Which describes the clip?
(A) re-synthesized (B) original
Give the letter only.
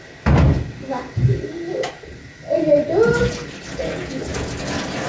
B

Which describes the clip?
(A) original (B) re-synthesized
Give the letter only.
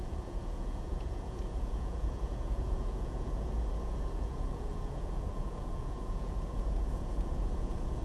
B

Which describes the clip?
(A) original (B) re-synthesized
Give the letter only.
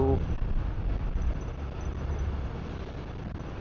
A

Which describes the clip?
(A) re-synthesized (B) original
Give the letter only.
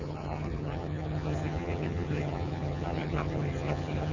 A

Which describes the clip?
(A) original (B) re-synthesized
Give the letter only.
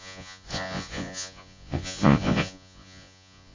B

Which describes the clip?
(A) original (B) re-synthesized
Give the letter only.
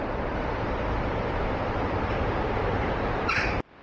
B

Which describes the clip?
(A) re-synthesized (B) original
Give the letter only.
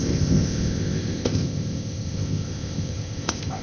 A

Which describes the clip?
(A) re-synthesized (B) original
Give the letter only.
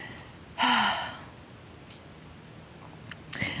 B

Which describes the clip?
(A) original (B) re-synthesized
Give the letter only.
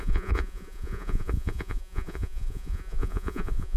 B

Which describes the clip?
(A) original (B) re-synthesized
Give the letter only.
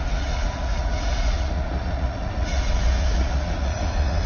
B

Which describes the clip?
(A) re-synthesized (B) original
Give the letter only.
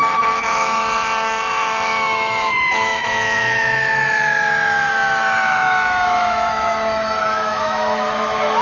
A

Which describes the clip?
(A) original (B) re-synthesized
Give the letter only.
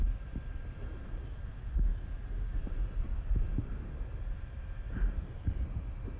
A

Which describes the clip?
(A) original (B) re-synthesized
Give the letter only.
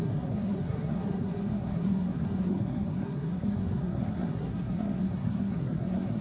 B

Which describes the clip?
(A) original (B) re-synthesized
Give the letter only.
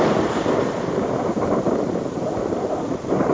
B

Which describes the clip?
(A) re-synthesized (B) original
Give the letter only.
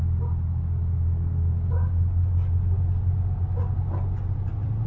B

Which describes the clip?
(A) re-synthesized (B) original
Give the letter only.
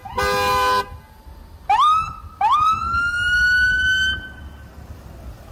B